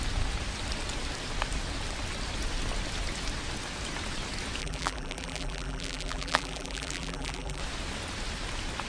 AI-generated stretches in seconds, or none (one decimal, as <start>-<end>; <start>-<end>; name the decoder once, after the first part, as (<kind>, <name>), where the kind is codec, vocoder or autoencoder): 4.6-7.6 (vocoder, BigVGAN v2)